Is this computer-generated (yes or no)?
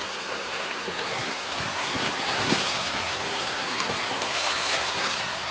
yes